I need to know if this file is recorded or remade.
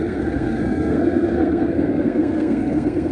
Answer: remade